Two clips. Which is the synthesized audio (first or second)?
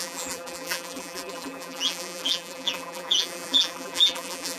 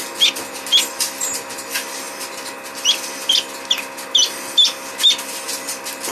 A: first